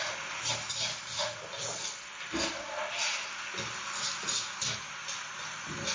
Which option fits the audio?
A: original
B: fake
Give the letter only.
A